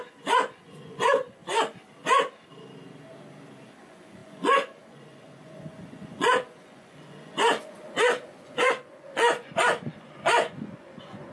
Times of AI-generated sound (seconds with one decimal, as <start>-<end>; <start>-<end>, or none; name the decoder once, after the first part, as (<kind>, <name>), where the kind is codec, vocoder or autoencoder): 0.0-1.4 (vocoder, Vocos); 3.8-11.3